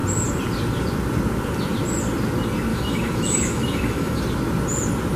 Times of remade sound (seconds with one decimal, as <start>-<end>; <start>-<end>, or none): 2.7-4.2